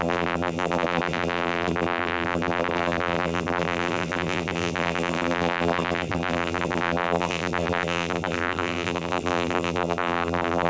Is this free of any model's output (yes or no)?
no